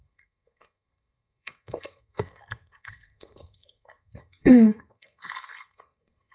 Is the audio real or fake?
fake